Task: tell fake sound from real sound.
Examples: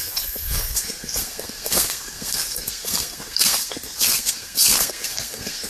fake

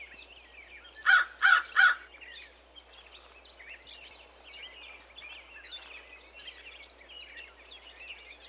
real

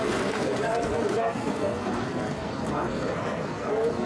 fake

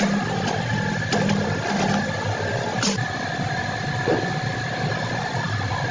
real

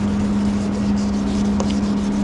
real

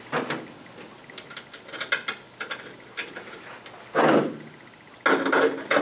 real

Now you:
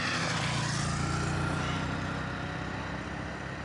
real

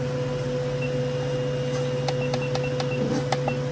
real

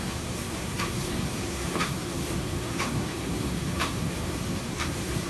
fake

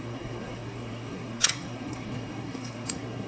fake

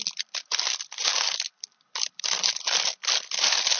real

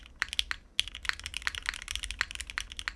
real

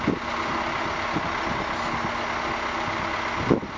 real